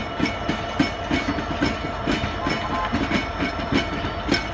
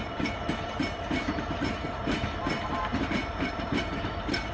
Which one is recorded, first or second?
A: first